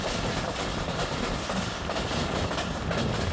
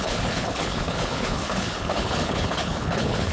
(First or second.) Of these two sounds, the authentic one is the first